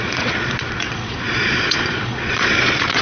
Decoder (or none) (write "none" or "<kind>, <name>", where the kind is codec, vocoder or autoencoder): vocoder, Vocos